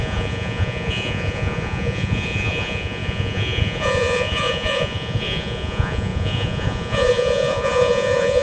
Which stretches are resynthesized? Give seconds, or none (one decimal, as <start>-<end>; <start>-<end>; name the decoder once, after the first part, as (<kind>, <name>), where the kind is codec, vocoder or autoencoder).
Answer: 0.0-8.4 (vocoder, Vocos)